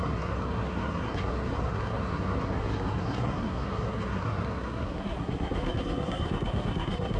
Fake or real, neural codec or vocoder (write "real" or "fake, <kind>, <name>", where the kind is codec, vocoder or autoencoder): fake, codec, SNAC